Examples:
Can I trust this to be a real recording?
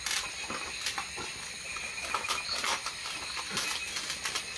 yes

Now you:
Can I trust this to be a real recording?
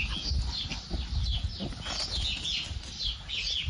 yes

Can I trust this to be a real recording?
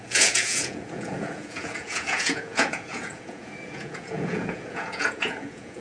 no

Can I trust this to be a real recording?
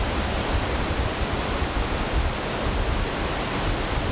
yes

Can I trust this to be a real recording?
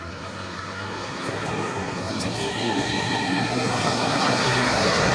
no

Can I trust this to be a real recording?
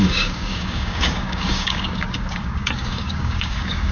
no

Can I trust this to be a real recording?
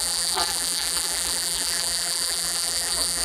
no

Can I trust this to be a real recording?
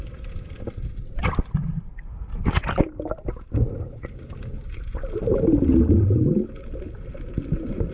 no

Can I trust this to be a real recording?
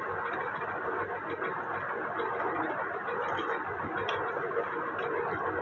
yes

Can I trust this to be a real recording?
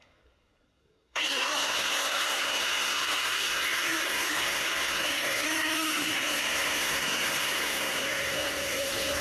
no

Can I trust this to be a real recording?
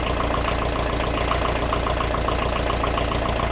yes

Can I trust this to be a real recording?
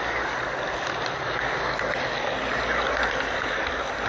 yes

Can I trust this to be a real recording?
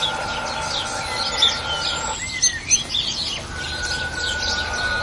yes